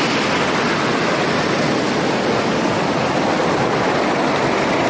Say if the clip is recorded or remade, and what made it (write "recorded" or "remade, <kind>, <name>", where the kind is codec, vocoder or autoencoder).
recorded